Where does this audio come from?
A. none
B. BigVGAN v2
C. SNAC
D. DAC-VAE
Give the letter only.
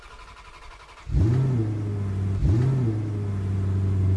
A